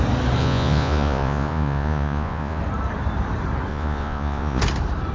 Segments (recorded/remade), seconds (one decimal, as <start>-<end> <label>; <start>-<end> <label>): 0.0-0.4 recorded; 0.4-2.6 remade; 2.6-3.7 recorded; 3.7-4.6 remade; 4.6-5.1 recorded